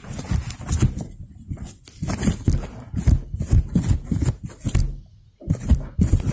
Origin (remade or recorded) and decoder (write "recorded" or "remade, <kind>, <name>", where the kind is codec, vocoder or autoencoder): recorded